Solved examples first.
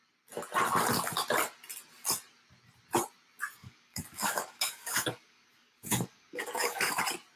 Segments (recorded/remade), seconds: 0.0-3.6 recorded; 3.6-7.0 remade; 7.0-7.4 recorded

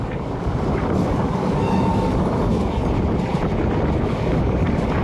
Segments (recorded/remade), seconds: 0.0-2.8 remade; 2.8-4.0 recorded; 4.0-5.0 remade